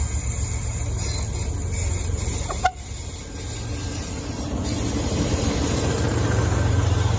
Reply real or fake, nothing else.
real